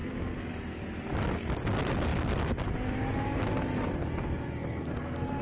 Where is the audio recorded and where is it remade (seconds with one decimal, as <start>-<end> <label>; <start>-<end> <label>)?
0.0-5.4 recorded